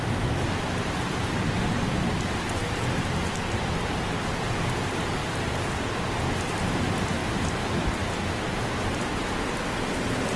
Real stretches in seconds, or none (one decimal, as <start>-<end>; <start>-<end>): 0.0-5.2; 6.2-10.4